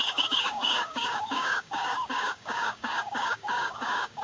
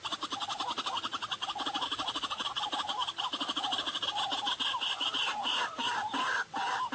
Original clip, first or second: second